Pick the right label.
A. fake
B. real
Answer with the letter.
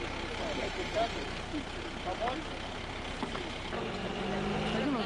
B